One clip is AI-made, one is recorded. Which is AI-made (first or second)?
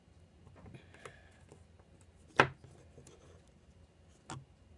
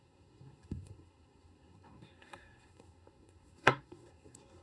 second